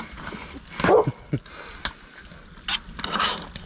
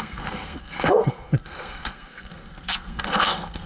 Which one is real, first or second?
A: first